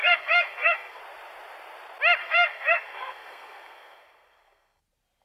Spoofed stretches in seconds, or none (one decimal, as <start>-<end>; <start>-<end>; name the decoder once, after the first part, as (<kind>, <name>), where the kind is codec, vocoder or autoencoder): 0.0-1.0 (codec, SNAC); 2.2-4.8